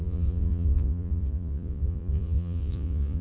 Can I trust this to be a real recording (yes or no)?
no